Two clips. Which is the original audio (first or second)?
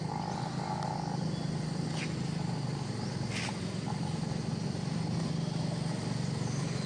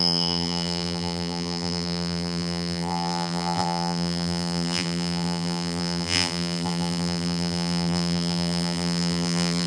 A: first